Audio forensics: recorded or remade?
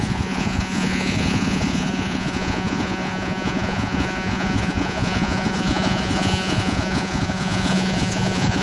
remade